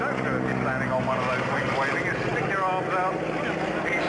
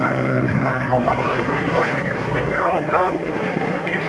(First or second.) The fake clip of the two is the second